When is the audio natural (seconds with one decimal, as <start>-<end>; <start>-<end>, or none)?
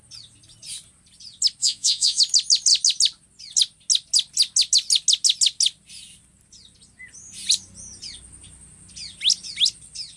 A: 0.0-1.6; 2.2-10.2